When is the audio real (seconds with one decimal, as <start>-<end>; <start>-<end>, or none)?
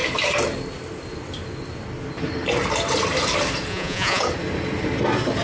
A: 0.0-3.7; 4.2-5.4